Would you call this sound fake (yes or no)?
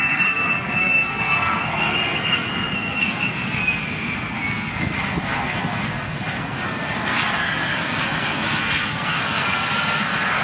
yes